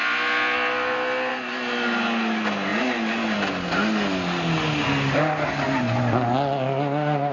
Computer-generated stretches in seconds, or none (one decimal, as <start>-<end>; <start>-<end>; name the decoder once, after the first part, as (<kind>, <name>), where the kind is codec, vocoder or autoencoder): none